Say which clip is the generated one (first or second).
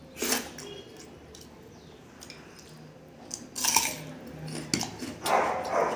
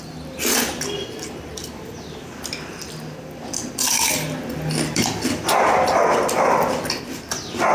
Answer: second